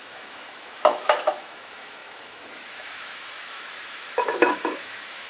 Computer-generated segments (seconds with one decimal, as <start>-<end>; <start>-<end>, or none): 0.0-5.3